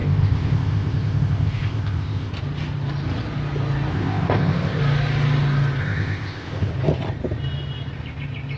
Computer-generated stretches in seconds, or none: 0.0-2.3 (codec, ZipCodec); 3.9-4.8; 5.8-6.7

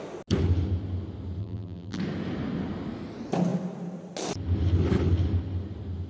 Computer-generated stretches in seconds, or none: 1.4-2.0 (vocoder, BigVGAN v2)

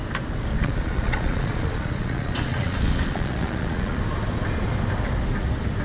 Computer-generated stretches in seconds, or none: 0.5-4.0 (vocoder, Vocos)

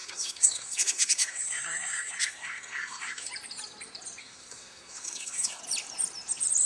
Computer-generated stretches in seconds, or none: 0.0-3.3 (codec, SNAC); 4.2-5.6